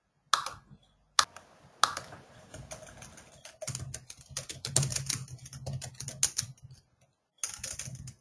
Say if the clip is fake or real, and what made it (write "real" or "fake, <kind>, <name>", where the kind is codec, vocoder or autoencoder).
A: real